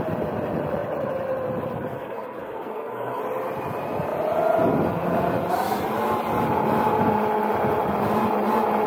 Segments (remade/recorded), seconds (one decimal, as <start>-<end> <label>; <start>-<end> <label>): 0.0-1.9 recorded; 1.9-3.2 remade; 3.2-8.9 recorded

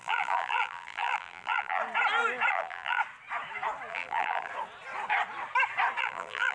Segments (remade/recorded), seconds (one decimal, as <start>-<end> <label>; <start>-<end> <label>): 0.0-1.8 remade; 1.8-2.5 recorded; 2.5-3.0 remade; 3.0-3.9 recorded; 3.9-4.5 remade; 4.5-6.0 recorded; 6.0-6.5 remade

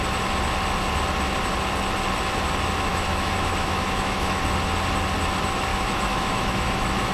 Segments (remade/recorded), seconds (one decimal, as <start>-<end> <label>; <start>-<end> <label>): 0.0-2.9 recorded; 2.9-4.4 remade; 4.4-5.7 recorded; 5.7-7.1 remade

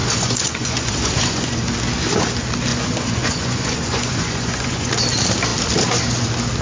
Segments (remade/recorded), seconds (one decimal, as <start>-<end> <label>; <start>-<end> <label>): 0.0-1.6 remade; 1.6-2.7 recorded; 2.7-4.9 remade; 4.9-6.6 recorded